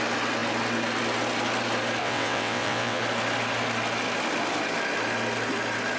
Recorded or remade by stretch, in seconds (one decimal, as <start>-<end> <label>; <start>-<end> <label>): 0.0-2.0 recorded; 2.0-3.0 remade; 3.0-6.0 recorded